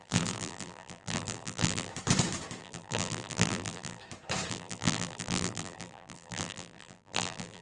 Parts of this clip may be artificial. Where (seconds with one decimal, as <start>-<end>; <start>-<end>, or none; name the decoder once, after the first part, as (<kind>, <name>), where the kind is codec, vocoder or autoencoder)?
0.0-1.9 (vocoder, BigVGAN v2); 2.6-4.0; 4.5-7.6